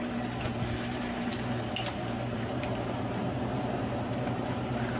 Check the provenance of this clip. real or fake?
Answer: fake